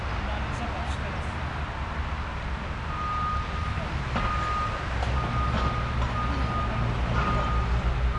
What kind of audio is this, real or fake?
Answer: real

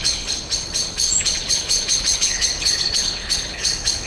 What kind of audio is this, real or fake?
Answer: fake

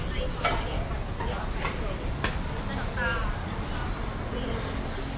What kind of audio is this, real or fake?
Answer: real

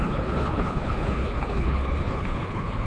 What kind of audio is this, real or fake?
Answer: fake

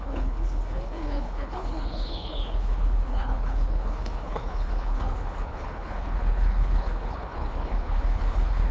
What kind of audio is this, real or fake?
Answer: fake